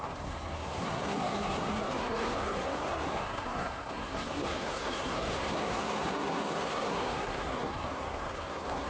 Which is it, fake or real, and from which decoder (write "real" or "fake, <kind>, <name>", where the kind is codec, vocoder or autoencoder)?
fake, codec, SNAC